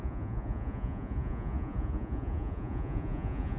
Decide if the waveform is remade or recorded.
remade